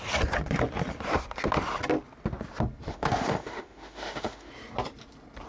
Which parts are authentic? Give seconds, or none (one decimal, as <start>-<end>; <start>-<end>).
0.0-2.9; 4.5-5.5